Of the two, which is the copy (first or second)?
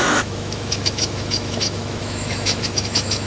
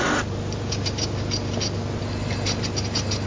first